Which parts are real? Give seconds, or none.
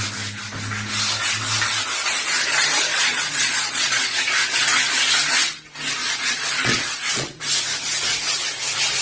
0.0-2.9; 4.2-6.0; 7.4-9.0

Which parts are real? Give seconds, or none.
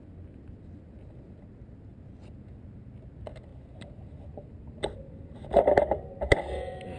0.0-7.0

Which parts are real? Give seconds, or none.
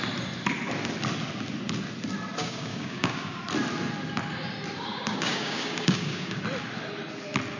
0.0-2.4; 3.4-4.9; 6.4-7.6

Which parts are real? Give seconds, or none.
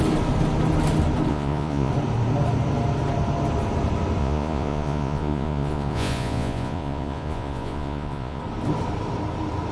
0.0-1.3; 1.9-4.2; 8.4-9.7